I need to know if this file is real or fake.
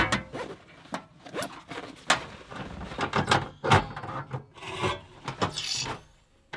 real